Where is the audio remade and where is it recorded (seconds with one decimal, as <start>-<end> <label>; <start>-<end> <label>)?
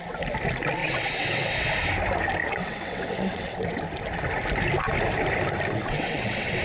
0.0-0.8 recorded; 0.8-1.7 remade; 1.7-2.4 recorded; 2.4-3.8 remade; 3.8-5.8 recorded; 5.8-6.6 remade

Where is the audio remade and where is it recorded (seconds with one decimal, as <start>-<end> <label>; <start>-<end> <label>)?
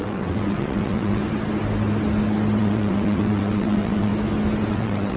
0.0-1.2 remade; 1.2-2.6 recorded; 2.6-4.1 remade; 4.1-4.7 recorded; 4.7-5.2 remade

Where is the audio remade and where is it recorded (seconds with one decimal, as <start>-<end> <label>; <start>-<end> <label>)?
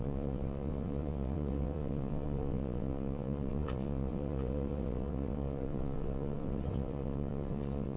0.0-8.0 remade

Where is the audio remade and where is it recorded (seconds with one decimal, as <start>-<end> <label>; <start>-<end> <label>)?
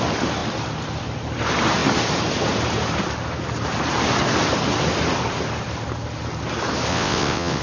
0.0-6.9 recorded; 6.9-7.6 remade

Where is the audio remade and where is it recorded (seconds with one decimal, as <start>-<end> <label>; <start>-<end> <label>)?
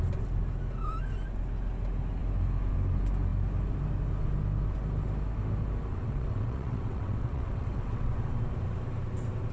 0.0-5.9 recorded; 5.9-8.1 remade; 8.1-9.5 recorded